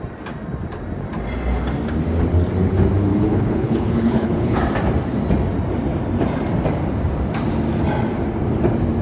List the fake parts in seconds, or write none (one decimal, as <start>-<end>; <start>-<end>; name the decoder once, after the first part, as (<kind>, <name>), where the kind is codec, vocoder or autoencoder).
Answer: 3.1-4.6 (codec, HILCodec)